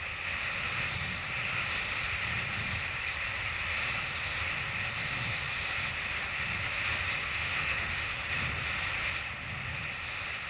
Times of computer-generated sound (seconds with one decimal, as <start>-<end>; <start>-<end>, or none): 7.2-8.2